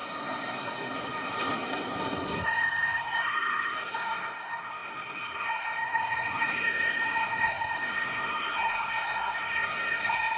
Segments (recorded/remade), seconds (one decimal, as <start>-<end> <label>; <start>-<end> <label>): 0.0-10.4 remade